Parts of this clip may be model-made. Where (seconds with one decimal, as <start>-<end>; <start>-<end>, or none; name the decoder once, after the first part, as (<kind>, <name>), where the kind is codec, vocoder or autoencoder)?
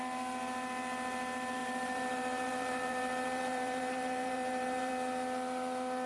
1.6-4.9 (vocoder, BigVGAN v2)